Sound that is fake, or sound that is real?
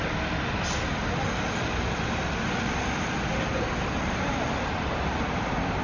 real